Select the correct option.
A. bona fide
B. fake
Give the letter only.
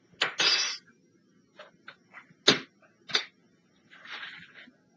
A